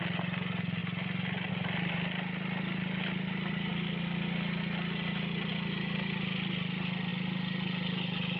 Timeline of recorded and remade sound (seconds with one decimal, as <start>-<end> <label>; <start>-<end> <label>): 0.0-8.4 recorded